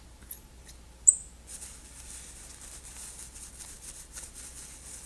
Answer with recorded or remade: recorded